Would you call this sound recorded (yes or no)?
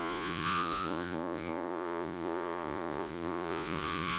no